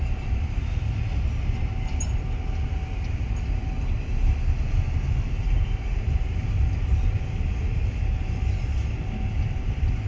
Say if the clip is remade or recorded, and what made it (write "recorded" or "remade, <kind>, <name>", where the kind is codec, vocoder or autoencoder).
recorded